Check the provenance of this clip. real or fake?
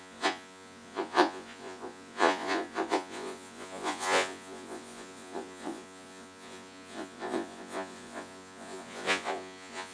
fake